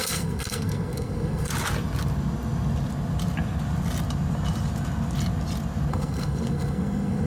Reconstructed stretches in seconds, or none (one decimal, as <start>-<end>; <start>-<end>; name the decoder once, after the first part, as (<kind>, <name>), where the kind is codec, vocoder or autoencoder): 0.0-1.5 (codec, SNAC); 5.9-7.3